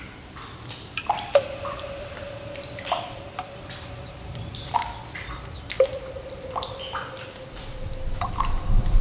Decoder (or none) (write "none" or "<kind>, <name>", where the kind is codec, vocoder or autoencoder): vocoder, BigVGAN v2